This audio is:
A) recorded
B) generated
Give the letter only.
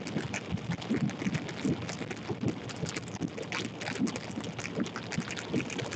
A